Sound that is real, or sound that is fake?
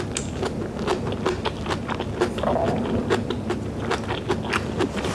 real